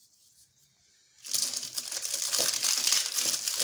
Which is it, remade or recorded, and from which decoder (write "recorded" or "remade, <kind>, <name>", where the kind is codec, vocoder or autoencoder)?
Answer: recorded